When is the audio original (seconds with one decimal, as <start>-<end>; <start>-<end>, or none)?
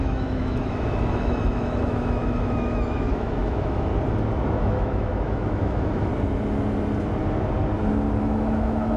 3.9-4.5; 6.1-8.2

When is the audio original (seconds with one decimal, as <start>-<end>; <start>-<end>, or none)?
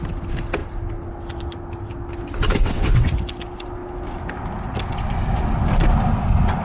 0.0-2.5; 3.1-6.6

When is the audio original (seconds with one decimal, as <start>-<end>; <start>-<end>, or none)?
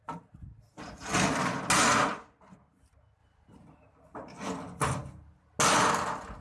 0.0-6.4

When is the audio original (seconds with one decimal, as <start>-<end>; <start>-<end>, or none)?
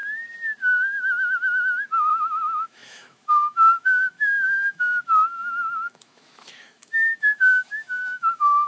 0.0-2.1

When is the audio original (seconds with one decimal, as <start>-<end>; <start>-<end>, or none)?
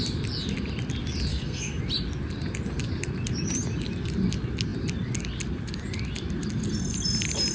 0.0-1.3; 1.8-7.5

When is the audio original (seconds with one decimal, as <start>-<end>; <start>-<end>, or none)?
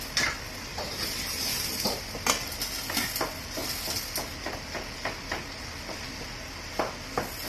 0.0-0.7; 2.0-7.5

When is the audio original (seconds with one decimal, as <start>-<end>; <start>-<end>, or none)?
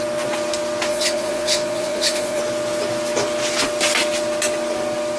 0.0-0.9; 2.4-5.2